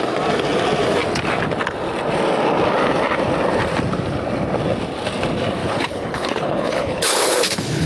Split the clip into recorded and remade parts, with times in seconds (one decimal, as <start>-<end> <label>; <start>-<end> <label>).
0.0-5.6 recorded; 5.6-7.9 remade